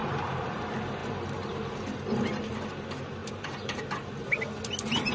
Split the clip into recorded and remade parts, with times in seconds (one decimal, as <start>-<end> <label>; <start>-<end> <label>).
0.0-0.6 remade; 0.6-3.2 recorded; 3.2-3.8 remade; 3.8-5.1 recorded